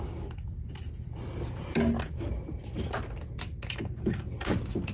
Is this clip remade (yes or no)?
no